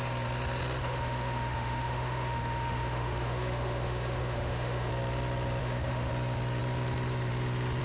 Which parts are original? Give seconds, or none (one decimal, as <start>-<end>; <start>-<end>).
0.0-0.8; 4.9-5.6; 6.1-7.8